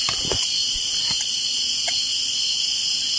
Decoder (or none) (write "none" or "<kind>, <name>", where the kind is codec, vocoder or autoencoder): none